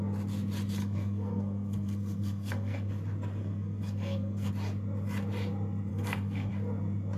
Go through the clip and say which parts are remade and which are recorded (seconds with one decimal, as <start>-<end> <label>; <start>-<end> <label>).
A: 0.0-0.8 recorded; 0.8-2.9 remade; 2.9-3.4 recorded; 3.4-4.5 remade; 4.5-5.9 recorded; 5.9-6.5 remade; 6.5-7.2 recorded